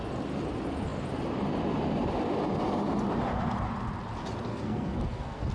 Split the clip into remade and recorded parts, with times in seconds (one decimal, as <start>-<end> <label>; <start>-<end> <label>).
0.0-4.5 recorded; 4.5-5.5 remade